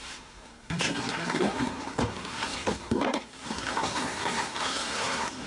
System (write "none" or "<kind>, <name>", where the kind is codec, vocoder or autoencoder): codec, SNAC